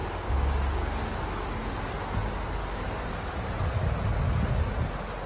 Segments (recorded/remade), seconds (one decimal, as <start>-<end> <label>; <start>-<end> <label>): 0.0-1.9 remade; 1.9-2.6 recorded; 2.6-3.1 remade; 3.1-5.3 recorded